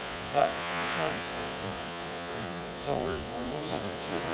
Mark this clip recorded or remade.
remade